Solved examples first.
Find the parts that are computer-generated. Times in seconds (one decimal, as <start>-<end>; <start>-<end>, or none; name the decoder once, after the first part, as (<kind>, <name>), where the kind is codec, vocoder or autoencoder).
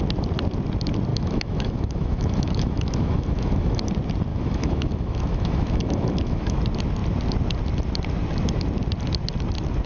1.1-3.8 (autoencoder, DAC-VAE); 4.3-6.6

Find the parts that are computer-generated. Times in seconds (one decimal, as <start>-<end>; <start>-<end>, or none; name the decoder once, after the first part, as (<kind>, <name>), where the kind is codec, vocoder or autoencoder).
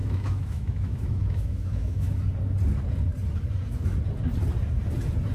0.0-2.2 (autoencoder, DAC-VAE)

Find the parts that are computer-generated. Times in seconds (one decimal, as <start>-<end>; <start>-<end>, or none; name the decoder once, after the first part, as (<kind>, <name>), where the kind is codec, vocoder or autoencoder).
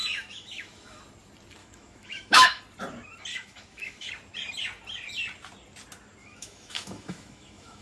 0.0-1.0 (autoencoder, DAC-VAE); 1.6-2.6; 3.3-4.1; 6.2-7.8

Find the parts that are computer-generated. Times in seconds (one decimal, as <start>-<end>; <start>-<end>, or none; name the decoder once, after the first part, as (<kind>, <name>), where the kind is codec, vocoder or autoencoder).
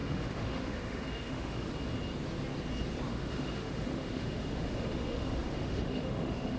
0.0-1.7 (autoencoder, DAC-VAE); 3.1-6.6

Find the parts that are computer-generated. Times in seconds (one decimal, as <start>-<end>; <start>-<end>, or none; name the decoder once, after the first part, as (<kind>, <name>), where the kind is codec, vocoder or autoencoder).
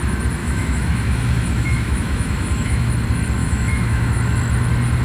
0.4-2.9 (autoencoder, DAC-VAE); 3.4-4.1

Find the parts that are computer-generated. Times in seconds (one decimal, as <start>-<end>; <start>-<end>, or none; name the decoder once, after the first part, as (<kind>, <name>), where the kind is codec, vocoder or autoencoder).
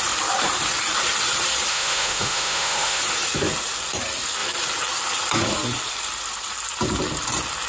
1.7-3.0 (autoencoder, DAC-VAE)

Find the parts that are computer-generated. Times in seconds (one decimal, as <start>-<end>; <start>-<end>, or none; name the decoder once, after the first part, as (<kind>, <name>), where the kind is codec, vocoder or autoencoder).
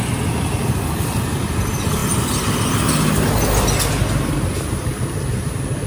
none